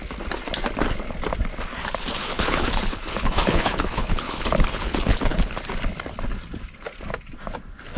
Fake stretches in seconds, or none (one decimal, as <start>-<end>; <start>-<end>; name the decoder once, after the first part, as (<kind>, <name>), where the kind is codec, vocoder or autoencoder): 2.2-5.5 (codec, HILCodec)